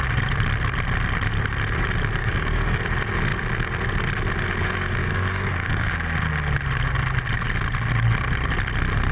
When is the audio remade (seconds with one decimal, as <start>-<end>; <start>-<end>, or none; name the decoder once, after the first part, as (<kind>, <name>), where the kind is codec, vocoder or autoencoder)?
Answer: 2.2-2.8 (codec, DAC); 5.0-5.9